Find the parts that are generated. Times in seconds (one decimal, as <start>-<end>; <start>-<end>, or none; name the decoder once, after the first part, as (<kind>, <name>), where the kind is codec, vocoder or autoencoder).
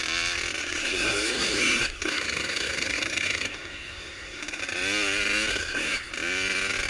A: 0.6-4.6 (codec, SNAC); 5.5-6.1